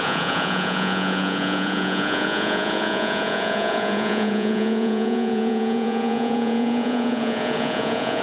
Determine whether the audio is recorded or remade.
remade